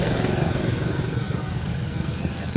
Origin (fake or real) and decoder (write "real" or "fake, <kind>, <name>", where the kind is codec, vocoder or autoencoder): fake, codec, SNAC